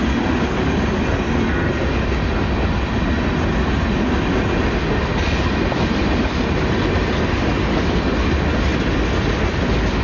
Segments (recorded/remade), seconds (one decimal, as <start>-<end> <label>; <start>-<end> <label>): 0.0-10.0 recorded

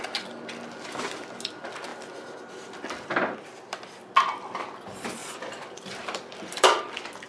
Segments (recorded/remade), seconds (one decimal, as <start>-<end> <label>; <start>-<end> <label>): 0.0-5.2 recorded; 5.2-6.8 remade; 6.8-7.3 recorded